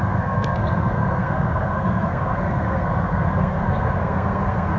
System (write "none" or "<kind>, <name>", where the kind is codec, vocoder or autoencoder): codec, SNAC